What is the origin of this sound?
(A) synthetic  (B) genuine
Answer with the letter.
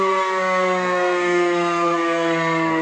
A